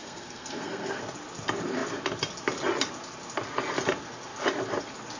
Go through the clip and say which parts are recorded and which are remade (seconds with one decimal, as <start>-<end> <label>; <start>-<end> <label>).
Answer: 0.0-1.0 remade; 1.0-5.2 recorded